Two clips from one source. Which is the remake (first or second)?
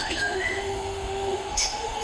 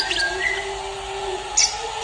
first